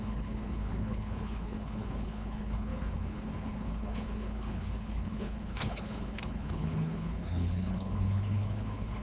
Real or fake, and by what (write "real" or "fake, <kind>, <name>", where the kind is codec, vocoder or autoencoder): fake, codec, HILCodec